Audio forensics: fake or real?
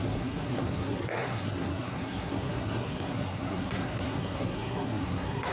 fake